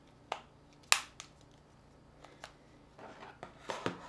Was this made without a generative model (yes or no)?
yes